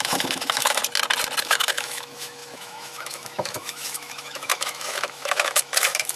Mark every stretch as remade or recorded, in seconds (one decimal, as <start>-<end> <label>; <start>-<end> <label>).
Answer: 0.0-0.8 remade; 0.8-1.4 recorded; 1.4-6.2 remade